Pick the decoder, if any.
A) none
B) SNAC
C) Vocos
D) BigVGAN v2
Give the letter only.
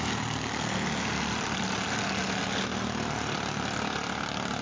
A